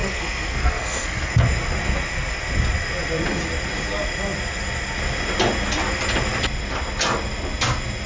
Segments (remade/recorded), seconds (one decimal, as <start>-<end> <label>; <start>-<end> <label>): 0.0-1.3 remade; 1.3-8.1 recorded